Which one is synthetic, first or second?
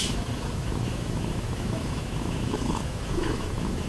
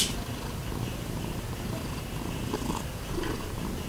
first